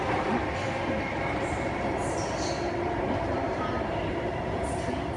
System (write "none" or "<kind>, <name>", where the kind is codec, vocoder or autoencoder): none